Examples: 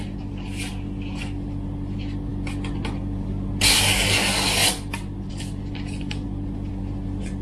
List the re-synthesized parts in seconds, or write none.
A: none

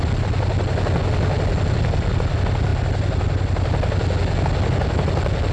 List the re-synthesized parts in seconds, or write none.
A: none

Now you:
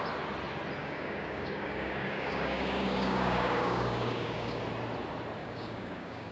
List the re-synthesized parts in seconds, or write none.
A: 0.8-4.6; 5.4-6.3

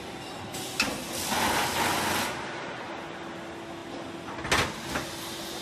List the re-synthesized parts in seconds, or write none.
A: none

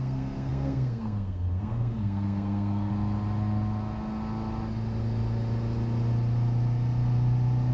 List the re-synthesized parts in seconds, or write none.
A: 0.0-2.9

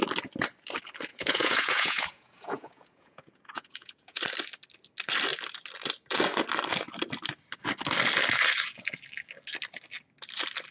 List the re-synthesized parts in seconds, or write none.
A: 1.1-4.2

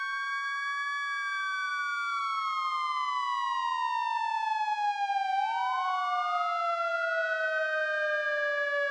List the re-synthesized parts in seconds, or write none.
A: none